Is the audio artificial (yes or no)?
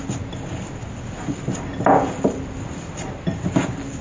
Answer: no